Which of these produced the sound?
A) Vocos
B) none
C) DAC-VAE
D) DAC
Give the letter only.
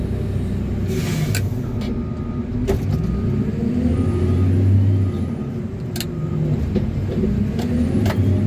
B